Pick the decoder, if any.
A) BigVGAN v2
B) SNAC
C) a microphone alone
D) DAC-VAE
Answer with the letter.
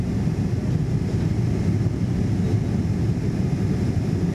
C